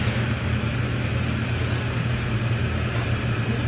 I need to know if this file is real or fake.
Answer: real